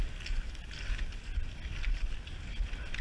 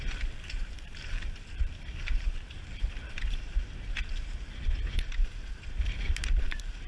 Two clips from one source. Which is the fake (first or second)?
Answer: second